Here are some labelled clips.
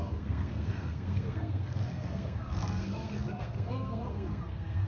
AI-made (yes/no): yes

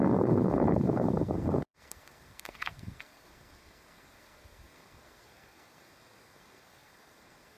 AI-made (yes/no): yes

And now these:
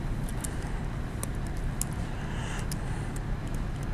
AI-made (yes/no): no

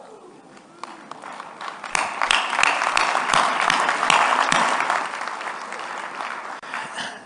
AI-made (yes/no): no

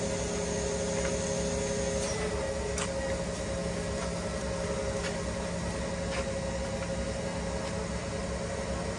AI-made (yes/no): no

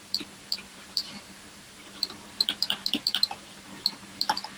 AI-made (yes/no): yes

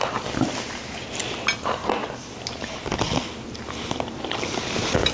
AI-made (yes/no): no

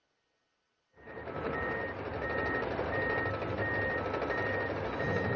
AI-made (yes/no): no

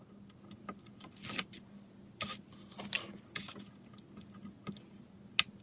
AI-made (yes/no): no